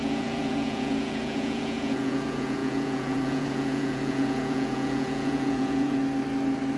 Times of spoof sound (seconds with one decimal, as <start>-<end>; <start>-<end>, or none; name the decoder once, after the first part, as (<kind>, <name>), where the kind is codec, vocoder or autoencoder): 0.0-6.0 (vocoder, Vocos)

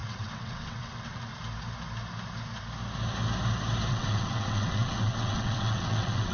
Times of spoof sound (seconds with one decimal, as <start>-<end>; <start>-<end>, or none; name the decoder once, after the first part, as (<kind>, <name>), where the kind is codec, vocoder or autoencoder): 0.0-1.3 (vocoder, WaveNeXt); 3.9-6.3